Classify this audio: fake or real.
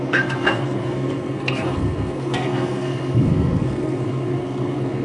fake